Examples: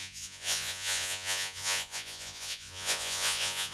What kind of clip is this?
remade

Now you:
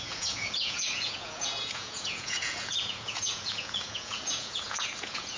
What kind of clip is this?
remade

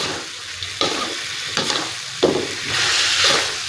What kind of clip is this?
recorded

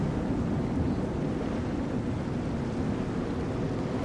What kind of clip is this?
recorded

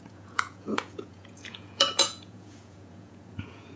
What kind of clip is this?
remade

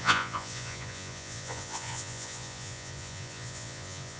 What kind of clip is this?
remade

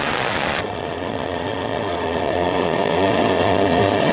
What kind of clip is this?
remade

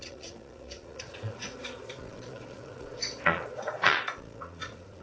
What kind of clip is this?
remade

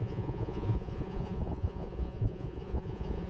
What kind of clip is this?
remade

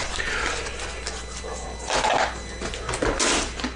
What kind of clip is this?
recorded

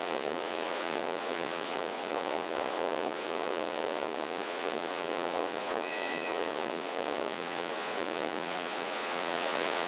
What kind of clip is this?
remade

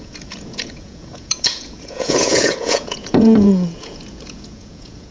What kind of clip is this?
remade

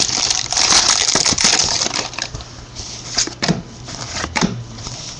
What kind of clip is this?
recorded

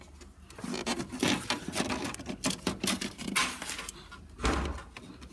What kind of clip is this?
recorded